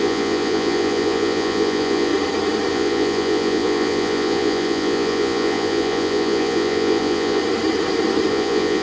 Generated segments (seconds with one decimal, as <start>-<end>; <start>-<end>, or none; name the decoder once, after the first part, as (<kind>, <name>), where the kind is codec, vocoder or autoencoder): 0.0-2.1 (vocoder, Vocos); 2.7-7.4; 8.3-8.8

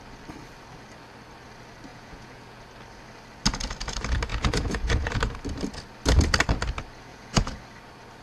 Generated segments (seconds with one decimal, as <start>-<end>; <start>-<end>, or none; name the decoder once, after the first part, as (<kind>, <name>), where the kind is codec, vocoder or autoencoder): 1.9-2.6 (vocoder, Vocos); 4.3-5.2; 7.1-7.6

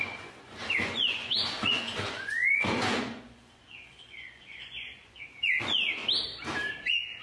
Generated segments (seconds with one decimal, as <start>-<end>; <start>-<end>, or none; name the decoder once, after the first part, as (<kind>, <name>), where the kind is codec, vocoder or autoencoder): 0.0-6.0 (vocoder, Vocos); 6.7-7.2

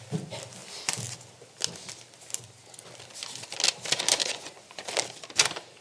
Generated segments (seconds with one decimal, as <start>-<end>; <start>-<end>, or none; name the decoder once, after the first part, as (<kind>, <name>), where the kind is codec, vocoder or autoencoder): 4.2-4.8 (vocoder, Vocos)

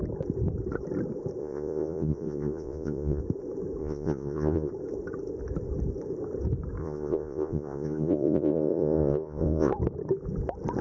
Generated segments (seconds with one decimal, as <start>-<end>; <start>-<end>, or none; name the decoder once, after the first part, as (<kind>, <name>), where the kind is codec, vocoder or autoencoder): 1.4-3.2 (vocoder, Vocos); 3.8-4.7; 6.8-9.7